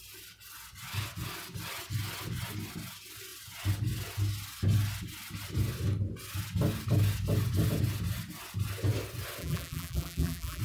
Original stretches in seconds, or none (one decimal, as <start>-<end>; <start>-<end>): 0.0-9.4